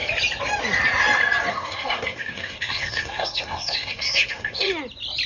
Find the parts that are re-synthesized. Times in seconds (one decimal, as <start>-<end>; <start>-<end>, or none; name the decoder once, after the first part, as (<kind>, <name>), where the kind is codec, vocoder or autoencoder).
1.5-4.7 (codec, SNAC)